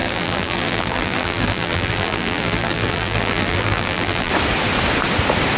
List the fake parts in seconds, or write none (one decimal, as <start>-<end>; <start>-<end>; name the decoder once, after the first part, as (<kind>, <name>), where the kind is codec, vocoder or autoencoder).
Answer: 0.0-4.3 (vocoder, BigVGAN v2)

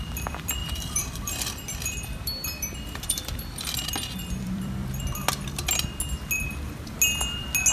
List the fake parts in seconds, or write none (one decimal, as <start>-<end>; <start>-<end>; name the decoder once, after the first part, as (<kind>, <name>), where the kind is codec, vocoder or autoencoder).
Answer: 0.6-5.0 (vocoder, BigVGAN v2)

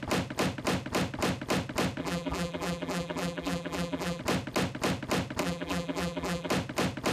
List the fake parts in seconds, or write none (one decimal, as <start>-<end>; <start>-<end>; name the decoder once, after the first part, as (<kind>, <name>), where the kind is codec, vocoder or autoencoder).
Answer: 2.0-4.2 (vocoder, BigVGAN v2); 5.4-6.5

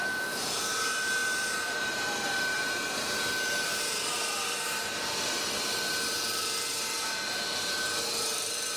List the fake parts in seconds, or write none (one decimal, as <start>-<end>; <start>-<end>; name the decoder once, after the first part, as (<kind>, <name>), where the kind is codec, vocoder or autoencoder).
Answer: 0.0-8.8 (vocoder, BigVGAN v2)

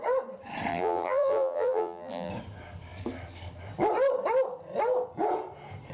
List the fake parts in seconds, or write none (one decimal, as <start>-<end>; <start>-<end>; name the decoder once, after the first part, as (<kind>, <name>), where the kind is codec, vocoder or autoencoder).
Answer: 0.7-2.3 (vocoder, BigVGAN v2)

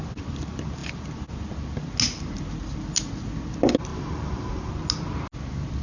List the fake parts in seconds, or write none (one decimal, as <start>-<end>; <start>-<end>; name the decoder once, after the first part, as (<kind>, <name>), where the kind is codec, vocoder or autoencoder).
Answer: 3.9-4.7 (vocoder, BigVGAN v2)

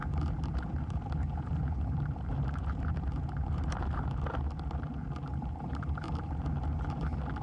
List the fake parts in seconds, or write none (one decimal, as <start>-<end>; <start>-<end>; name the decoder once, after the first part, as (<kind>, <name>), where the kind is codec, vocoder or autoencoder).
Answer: 0.0-4.1 (vocoder, BigVGAN v2); 5.3-6.3

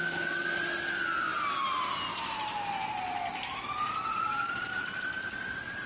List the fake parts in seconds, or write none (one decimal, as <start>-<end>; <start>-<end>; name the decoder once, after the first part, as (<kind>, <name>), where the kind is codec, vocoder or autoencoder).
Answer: 2.1-5.9 (vocoder, BigVGAN v2)